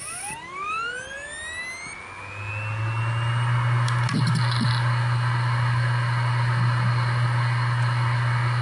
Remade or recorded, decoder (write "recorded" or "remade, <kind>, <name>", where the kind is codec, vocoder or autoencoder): recorded